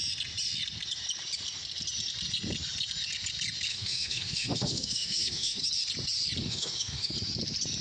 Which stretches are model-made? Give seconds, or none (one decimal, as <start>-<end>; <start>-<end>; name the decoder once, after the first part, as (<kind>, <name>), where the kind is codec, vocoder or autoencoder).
3.7-5.6 (autoencoder, DAC-VAE); 6.4-7.1